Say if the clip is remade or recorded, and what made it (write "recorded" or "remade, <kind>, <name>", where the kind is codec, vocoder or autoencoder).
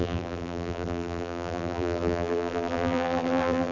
remade, vocoder, BigVGAN v2